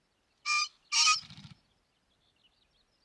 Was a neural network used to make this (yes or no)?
no